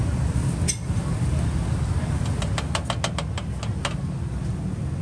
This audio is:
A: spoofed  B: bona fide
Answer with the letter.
B